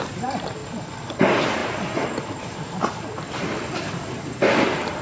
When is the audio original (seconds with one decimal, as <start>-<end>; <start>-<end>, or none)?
0.6-1.1